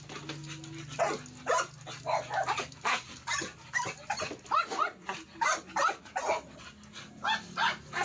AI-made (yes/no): no